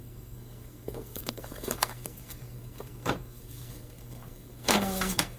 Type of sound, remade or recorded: remade